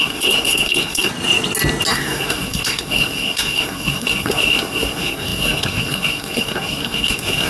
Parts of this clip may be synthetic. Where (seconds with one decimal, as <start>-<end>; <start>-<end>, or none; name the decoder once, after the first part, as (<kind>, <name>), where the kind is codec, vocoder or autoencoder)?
0.0-1.1 (codec, SNAC); 1.9-7.5